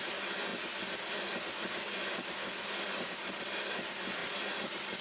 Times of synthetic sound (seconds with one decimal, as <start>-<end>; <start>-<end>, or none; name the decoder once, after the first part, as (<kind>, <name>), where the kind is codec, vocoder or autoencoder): none